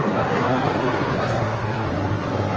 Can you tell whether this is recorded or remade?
remade